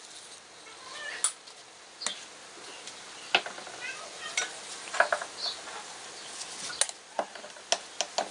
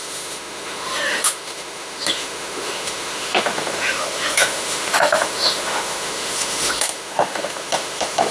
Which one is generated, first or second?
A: second